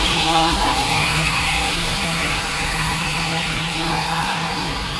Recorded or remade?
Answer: remade